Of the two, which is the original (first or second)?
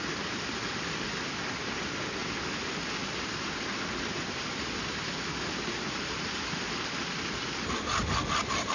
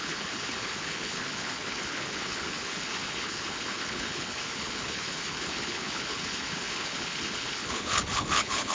first